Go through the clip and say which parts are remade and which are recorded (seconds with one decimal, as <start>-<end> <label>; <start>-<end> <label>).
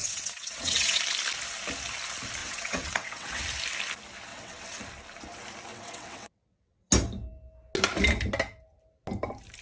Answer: 0.0-1.0 remade; 1.0-2.4 recorded; 2.4-3.4 remade; 3.4-4.3 recorded; 4.3-4.8 remade; 4.8-5.7 recorded; 5.7-6.9 remade; 6.9-9.6 recorded